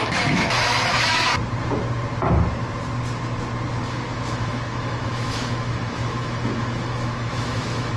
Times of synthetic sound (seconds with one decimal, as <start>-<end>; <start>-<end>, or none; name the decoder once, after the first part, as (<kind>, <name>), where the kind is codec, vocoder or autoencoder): 0.0-1.3 (autoencoder, DAC-VAE); 3.9-8.0